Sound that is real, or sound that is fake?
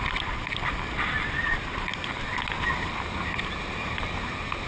real